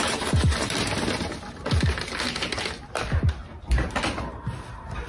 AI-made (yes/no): no